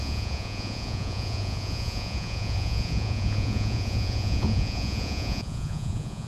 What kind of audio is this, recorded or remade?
remade